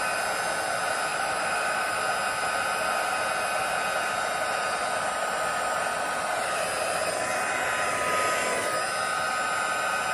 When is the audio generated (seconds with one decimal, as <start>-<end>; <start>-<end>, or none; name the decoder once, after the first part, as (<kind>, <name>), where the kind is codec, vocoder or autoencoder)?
1.1-2.0 (autoencoder, DAC-VAE)